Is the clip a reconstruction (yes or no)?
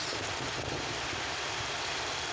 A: no